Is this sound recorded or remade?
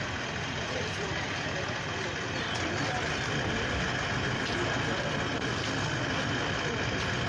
recorded